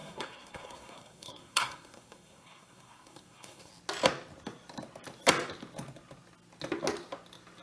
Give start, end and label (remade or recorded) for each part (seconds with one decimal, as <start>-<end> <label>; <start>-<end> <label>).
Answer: 0.0-3.7 remade; 3.7-7.6 recorded